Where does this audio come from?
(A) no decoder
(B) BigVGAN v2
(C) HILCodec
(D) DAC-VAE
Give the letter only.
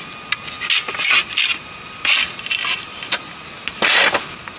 A